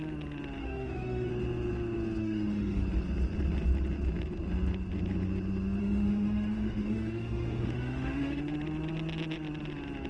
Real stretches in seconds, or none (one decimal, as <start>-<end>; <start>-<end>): 0.0-0.6; 1.3-2.2; 2.8-5.8; 8.4-10.1